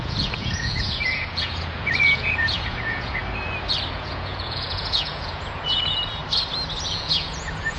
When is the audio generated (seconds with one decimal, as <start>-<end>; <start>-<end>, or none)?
0.0-3.2; 3.9-6.2; 6.9-7.8